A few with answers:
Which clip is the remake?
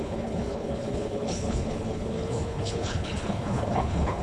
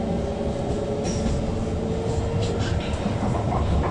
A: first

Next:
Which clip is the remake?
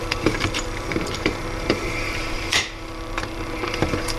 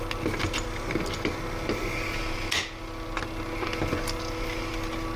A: first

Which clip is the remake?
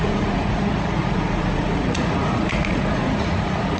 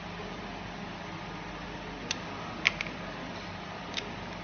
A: first